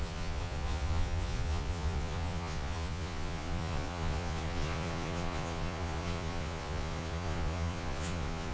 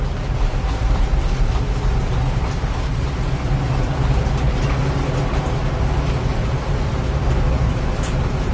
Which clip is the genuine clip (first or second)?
second